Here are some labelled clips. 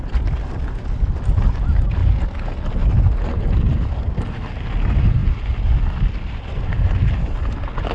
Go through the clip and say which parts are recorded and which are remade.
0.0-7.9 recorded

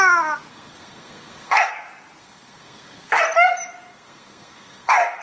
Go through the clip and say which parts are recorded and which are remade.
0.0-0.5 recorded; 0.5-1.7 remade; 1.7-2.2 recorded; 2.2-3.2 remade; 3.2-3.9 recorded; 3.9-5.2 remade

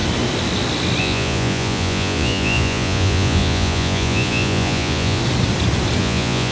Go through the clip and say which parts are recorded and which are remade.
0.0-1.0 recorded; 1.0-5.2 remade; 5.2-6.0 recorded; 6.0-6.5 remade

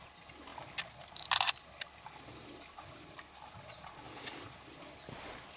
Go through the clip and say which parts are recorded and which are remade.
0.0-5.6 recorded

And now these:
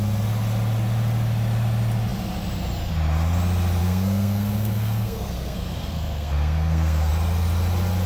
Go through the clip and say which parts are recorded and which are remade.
0.0-3.8 recorded; 3.8-7.1 remade; 7.1-8.1 recorded